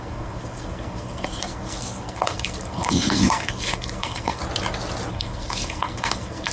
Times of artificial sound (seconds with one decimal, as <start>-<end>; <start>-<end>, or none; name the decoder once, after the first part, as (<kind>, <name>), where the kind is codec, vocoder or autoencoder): 0.0-4.4 (codec, SNAC); 5.1-6.5